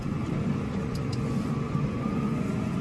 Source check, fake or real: fake